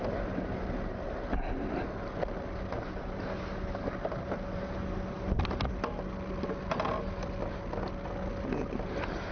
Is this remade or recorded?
recorded